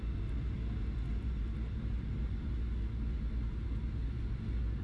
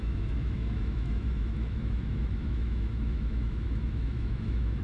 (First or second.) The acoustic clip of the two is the first